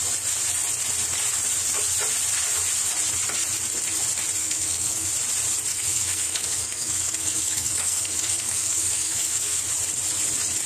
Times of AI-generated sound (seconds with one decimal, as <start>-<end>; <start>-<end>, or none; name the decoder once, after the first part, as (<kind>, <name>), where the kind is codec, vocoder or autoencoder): 4.4-5.1 (codec, SNAC); 5.7-9.6